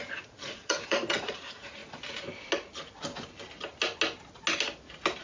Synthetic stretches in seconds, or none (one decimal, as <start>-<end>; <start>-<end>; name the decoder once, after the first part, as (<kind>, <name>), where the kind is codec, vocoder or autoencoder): 0.0-1.8 (vocoder, Vocos)